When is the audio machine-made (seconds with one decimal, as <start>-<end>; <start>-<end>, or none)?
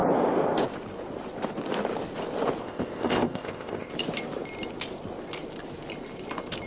2.6-3.9